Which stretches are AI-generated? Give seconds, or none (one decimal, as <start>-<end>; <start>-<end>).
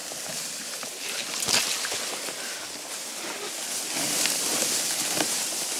none